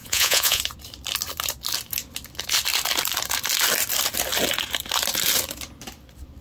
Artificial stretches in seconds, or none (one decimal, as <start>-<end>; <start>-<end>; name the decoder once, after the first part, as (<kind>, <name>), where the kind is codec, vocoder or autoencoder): 0.0-0.6 (vocoder, Vocos)